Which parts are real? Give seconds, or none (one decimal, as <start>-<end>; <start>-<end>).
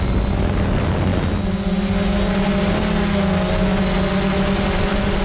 0.0-5.2